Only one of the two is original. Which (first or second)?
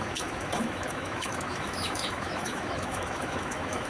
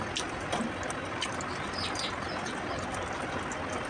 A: second